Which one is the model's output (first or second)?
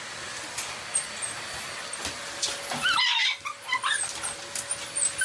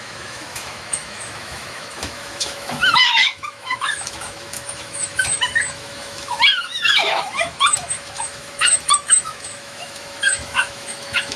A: second